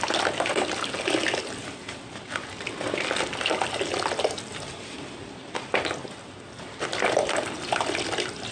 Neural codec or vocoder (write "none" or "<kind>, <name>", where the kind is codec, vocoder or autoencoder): none